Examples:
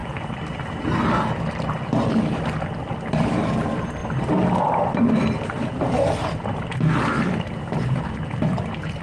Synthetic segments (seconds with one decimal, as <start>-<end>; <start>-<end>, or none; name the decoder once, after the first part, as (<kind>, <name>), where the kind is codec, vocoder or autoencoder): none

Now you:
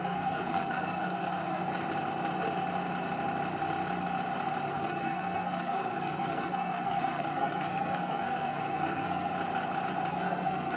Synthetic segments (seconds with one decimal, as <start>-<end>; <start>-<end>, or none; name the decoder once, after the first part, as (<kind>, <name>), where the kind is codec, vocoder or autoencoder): 0.0-1.6 (codec, SNAC); 4.7-9.3; 10.1-10.8

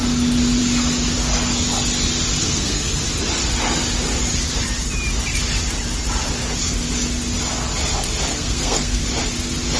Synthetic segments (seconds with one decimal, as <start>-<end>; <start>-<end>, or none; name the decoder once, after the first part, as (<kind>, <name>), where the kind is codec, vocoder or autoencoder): 2.4-2.9 (codec, SNAC); 8.3-9.0

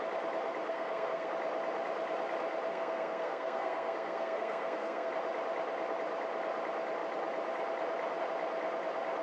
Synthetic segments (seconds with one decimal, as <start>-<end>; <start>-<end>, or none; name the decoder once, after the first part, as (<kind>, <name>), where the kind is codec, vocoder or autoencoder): 0.7-1.3 (codec, SNAC); 2.7-5.1

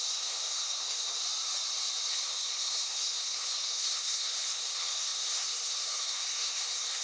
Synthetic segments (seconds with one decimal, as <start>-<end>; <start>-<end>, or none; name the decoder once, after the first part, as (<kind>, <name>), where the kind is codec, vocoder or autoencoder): 0.0-1.2 (codec, SNAC); 2.1-7.0